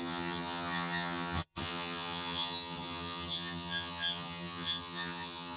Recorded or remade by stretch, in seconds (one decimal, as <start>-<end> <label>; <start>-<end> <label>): 0.0-5.6 remade